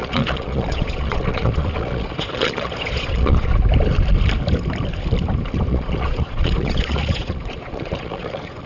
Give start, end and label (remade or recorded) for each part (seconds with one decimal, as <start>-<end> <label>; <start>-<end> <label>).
0.0-3.5 remade; 3.5-5.7 recorded; 5.7-8.7 remade